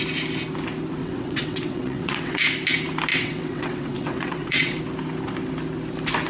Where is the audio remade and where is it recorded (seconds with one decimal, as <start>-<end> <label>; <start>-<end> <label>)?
0.0-1.0 recorded; 1.0-2.4 remade; 2.4-3.1 recorded; 3.1-4.8 remade; 4.8-6.3 recorded